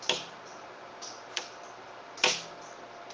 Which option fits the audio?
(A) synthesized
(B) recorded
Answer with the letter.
B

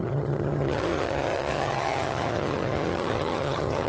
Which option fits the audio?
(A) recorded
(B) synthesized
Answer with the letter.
B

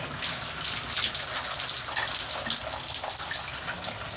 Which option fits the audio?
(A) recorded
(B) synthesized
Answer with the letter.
A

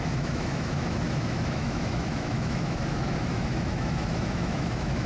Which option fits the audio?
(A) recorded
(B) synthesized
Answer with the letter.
B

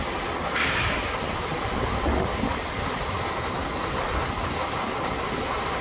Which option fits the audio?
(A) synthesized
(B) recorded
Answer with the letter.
B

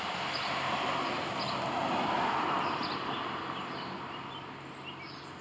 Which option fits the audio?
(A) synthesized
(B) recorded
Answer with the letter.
B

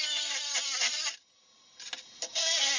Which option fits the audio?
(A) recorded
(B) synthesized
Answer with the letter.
A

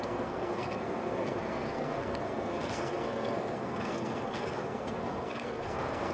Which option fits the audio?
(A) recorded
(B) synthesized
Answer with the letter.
B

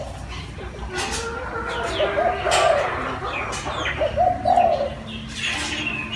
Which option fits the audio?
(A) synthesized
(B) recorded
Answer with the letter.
B